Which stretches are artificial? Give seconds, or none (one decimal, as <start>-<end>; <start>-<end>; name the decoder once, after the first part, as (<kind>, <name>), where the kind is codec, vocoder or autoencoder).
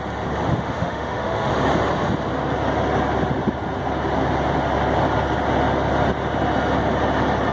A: 0.5-1.5 (autoencoder, DAC-VAE)